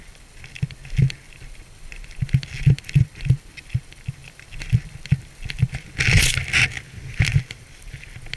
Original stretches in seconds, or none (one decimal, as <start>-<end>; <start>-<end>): 0.0-8.4